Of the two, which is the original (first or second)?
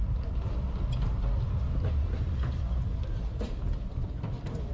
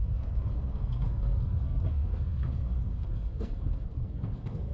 first